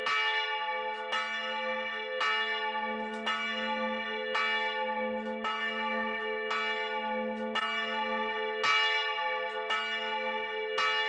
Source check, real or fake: real